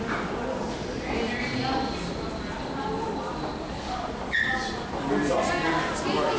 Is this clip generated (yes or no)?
no